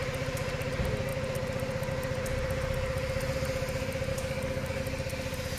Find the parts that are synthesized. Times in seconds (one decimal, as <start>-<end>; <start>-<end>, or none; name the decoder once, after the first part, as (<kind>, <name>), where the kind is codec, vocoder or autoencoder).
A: 4.1-4.8 (codec, DAC)